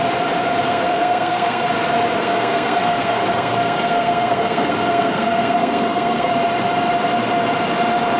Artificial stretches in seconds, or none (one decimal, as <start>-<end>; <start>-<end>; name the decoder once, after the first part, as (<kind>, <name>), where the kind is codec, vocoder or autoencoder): 0.6-1.7 (codec, SNAC); 2.2-6.3